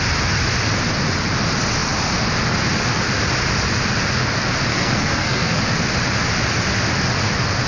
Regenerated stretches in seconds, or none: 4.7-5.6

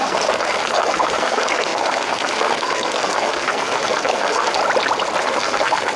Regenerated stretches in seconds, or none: 0.0-4.6; 5.2-6.0

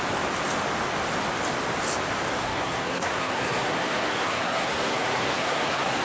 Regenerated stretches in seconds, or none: 2.3-6.0